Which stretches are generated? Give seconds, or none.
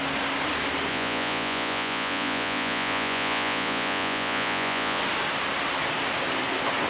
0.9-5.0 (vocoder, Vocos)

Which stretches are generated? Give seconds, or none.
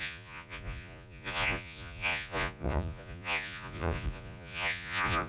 0.0-5.3 (vocoder, Vocos)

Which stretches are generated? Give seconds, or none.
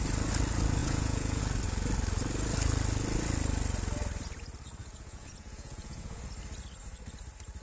0.8-1.4 (vocoder, Vocos); 4.8-6.2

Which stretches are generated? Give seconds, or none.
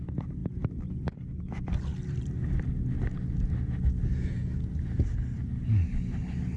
none